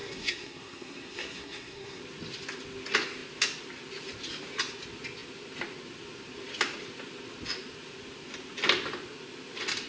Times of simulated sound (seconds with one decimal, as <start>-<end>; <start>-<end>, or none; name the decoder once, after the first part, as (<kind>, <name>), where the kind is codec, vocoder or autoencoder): 0.0-2.0 (codec, SNAC)